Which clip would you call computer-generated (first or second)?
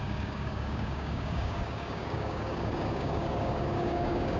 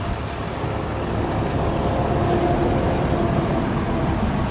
first